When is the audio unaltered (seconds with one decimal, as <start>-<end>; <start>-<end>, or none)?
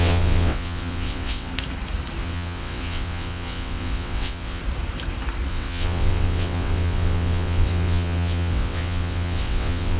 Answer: 1.5-2.2; 4.6-5.5